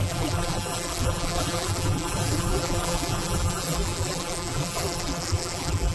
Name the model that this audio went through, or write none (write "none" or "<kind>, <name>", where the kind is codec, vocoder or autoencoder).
vocoder, BigVGAN v2